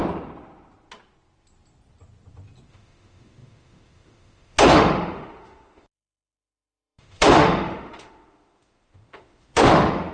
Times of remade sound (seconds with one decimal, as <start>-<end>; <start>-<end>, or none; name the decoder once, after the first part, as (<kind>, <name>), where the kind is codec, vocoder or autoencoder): 2.7-10.1 (autoencoder, DAC-VAE)